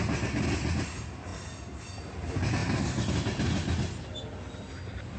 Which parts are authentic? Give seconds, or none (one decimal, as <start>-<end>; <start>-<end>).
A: 0.0-5.2